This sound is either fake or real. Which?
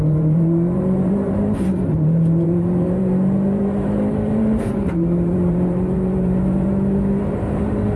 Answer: fake